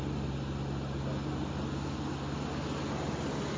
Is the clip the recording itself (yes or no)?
yes